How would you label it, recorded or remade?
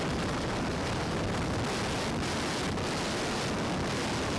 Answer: recorded